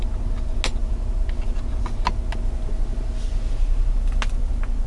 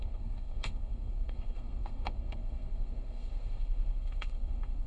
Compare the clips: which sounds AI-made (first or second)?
second